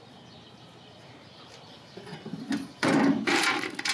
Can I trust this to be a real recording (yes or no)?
yes